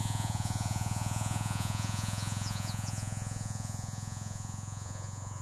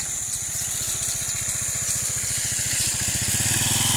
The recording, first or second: second